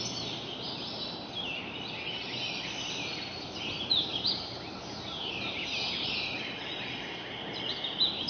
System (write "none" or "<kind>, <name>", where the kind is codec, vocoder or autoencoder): none